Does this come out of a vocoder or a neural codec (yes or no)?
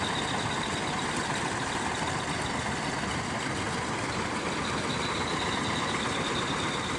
no